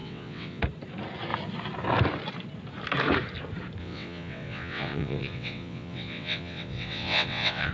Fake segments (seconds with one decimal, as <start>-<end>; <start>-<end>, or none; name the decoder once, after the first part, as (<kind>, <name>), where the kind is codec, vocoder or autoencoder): 0.0-0.6 (vocoder, WaveNeXt); 3.8-7.7